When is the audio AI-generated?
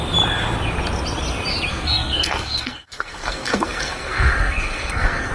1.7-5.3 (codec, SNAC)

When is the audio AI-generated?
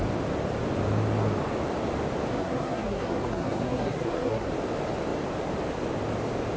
2.3-4.5 (codec, SNAC)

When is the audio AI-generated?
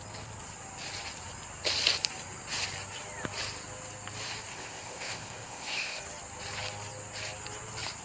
4.5-6.0 (codec, ZipCodec)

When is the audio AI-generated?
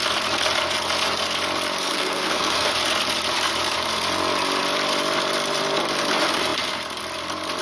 1.9-2.7 (codec, SNAC)